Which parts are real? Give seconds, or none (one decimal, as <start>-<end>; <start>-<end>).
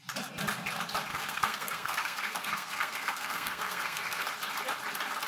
0.0-1.1; 4.3-5.3